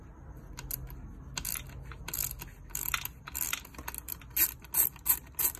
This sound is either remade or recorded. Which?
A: recorded